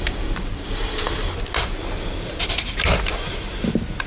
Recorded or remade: recorded